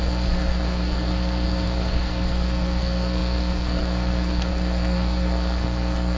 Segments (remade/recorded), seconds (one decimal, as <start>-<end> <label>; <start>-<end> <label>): 0.0-6.2 remade